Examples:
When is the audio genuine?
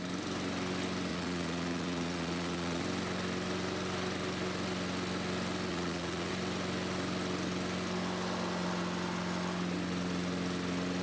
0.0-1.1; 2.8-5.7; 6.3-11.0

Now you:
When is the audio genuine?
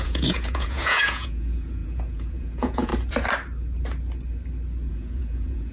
2.9-4.9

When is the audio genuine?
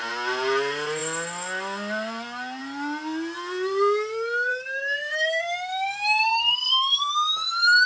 0.0-4.5; 5.4-6.3; 7.0-7.9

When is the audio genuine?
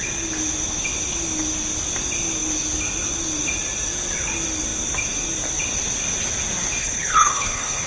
0.0-6.8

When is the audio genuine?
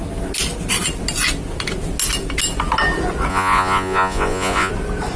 0.0-3.3; 4.7-5.2